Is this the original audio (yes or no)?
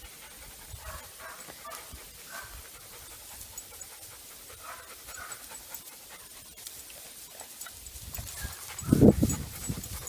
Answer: yes